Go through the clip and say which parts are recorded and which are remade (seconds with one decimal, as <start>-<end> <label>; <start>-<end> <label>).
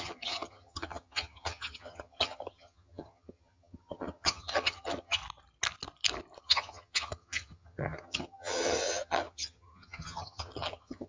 0.0-5.2 remade; 5.2-6.4 recorded; 6.4-11.1 remade